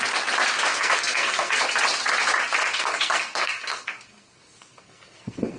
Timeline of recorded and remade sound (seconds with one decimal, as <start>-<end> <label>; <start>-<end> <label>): 0.0-0.7 recorded; 0.7-1.6 remade; 1.6-2.7 recorded; 2.7-5.6 remade